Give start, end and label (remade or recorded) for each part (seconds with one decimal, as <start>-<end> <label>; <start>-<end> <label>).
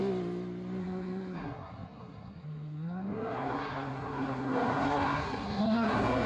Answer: 0.0-0.8 recorded; 0.8-6.3 remade